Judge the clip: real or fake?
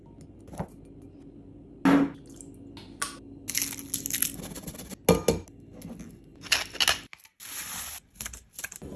real